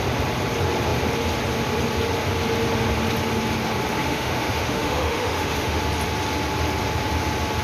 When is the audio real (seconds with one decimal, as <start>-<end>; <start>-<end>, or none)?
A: 0.0-4.0; 5.8-7.6